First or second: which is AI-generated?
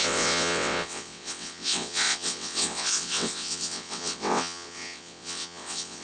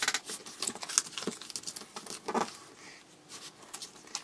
first